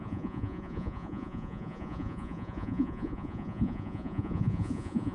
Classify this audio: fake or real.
fake